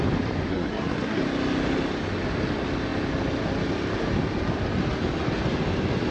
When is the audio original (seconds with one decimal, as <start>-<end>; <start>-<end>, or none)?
0.0-0.5; 1.2-6.1

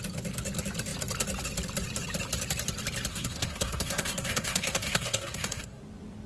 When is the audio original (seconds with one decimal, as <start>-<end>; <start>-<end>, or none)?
0.0-3.1; 5.8-6.3

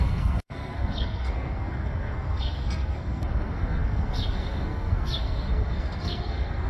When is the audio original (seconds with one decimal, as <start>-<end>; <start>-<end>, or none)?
none